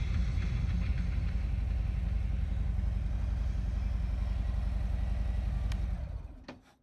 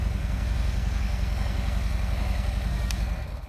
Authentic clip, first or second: first